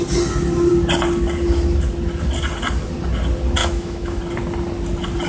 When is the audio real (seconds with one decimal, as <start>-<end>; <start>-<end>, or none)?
0.0-3.6; 4.2-5.3

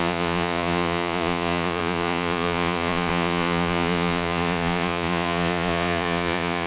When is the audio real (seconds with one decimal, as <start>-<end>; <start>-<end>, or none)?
none